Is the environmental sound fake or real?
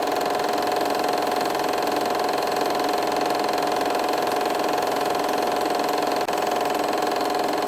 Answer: real